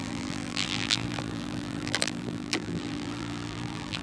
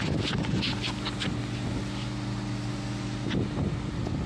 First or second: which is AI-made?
first